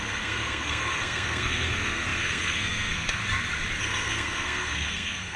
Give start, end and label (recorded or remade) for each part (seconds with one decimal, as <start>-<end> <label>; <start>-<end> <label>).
0.0-3.2 remade; 3.2-3.8 recorded; 3.8-5.4 remade